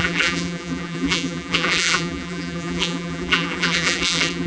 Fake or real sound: fake